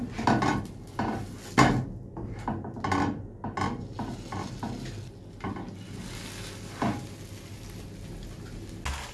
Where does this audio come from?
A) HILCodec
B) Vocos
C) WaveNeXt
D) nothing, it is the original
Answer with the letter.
D